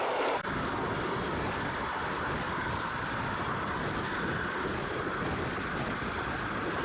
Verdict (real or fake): real